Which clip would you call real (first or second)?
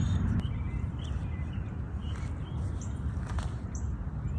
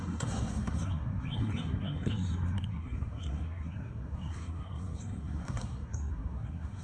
first